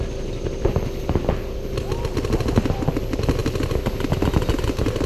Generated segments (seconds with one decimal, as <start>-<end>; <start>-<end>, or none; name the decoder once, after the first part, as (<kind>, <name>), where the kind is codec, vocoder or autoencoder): none